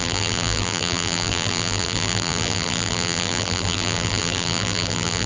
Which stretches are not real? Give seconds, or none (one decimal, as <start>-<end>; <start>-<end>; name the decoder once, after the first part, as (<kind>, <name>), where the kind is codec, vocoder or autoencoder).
0.0-5.3 (vocoder, BigVGAN v2)